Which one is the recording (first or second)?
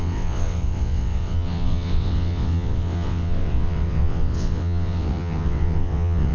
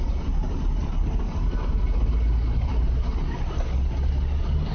second